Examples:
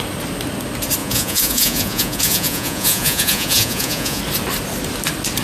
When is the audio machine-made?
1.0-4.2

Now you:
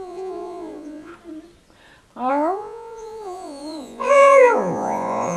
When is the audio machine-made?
0.0-1.1; 2.3-5.4

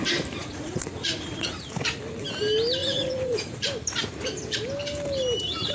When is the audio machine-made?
0.4-1.6; 2.8-3.6

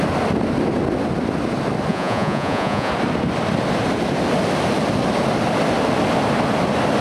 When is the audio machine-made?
1.9-2.9

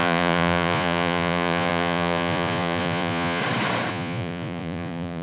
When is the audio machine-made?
0.0-3.4; 3.9-5.2

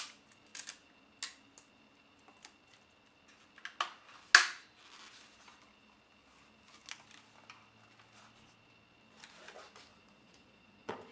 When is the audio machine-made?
9.9-11.1